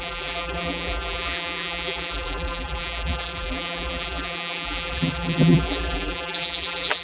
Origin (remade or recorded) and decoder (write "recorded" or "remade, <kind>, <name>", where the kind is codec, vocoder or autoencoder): remade, vocoder, BigVGAN v2